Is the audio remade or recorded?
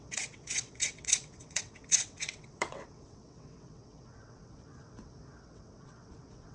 remade